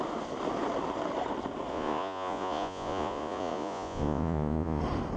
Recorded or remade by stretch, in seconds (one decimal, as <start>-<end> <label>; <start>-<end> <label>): 0.0-1.7 recorded; 1.7-4.8 remade; 4.8-5.2 recorded